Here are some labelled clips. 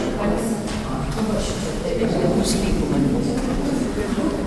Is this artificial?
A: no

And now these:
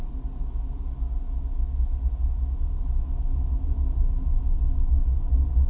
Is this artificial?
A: no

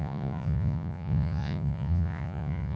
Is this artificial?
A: yes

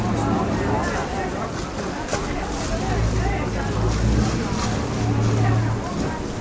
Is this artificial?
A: no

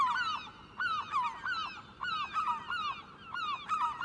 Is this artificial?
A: no